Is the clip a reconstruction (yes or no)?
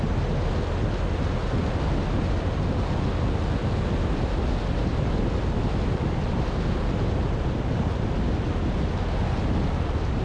no